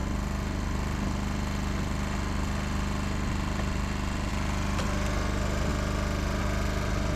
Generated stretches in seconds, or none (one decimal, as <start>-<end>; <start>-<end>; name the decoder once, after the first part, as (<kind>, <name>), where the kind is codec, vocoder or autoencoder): none